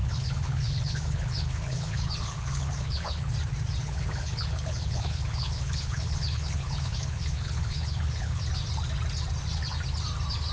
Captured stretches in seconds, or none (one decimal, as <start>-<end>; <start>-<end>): 3.3-3.8; 8.4-10.5